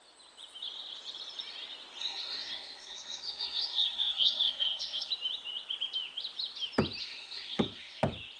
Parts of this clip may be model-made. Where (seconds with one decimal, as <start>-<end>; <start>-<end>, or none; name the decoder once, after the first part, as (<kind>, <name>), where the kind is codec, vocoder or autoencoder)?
2.0-5.1 (codec, SNAC); 7.0-8.0